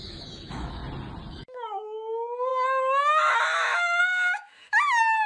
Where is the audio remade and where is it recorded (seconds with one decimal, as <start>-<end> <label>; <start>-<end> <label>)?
0.0-0.8 remade; 0.8-1.3 recorded; 1.3-5.3 remade